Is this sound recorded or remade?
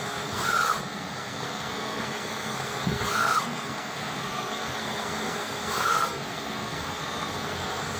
remade